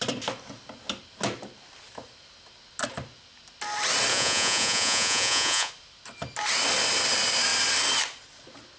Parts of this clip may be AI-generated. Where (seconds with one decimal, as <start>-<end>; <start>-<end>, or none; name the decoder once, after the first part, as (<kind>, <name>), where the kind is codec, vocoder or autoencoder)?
4.1-5.7 (vocoder, Vocos)